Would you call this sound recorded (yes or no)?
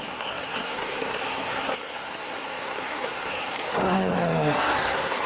no